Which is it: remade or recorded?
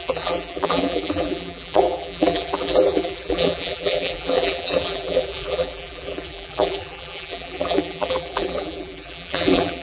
remade